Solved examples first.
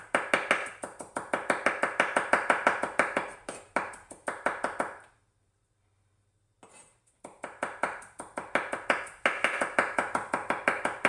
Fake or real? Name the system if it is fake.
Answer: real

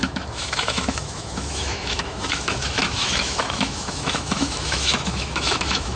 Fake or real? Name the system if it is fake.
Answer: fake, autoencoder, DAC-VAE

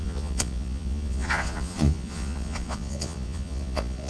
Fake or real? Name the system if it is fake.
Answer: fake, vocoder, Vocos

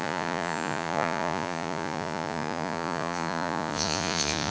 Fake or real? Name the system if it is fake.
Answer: fake, vocoder, Vocos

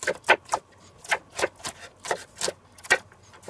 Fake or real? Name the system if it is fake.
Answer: real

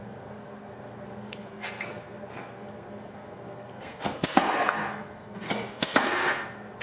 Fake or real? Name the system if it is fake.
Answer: fake, codec, SNAC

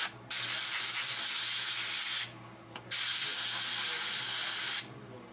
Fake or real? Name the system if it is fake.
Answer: real